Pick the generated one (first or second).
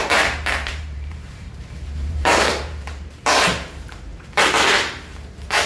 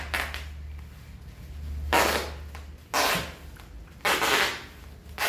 first